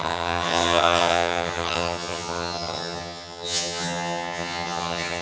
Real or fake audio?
fake